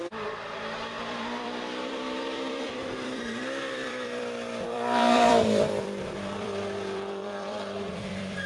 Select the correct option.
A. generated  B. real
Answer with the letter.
A